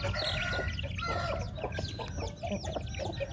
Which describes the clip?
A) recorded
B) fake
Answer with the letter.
A